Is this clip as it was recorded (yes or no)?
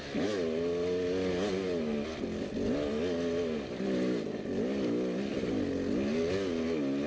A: yes